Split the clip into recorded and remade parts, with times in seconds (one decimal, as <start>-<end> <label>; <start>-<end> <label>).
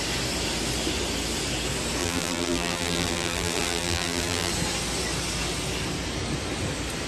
0.0-2.0 recorded; 2.0-4.5 remade; 4.5-7.1 recorded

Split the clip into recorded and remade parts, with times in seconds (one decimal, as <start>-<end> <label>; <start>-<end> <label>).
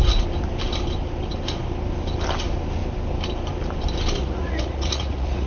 0.0-4.2 recorded; 4.2-5.5 remade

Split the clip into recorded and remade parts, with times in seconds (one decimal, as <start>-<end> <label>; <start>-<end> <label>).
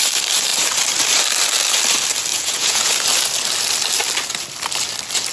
0.0-2.3 recorded; 2.3-2.9 remade; 2.9-5.3 recorded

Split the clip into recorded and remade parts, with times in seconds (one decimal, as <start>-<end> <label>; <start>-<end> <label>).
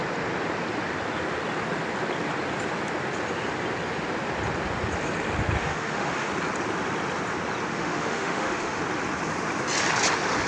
0.0-5.6 recorded; 5.6-6.3 remade; 6.3-7.7 recorded; 7.7-8.8 remade; 8.8-10.5 recorded